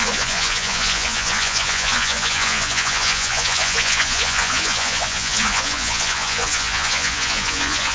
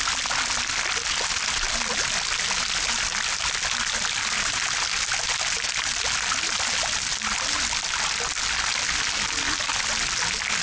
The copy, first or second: first